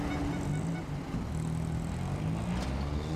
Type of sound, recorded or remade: recorded